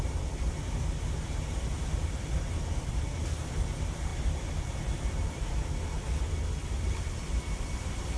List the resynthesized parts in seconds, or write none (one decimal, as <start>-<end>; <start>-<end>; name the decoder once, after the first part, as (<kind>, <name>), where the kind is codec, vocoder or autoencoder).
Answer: 4.1-5.5 (vocoder, BigVGAN v2)